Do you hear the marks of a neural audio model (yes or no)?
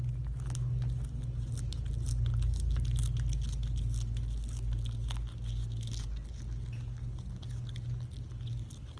no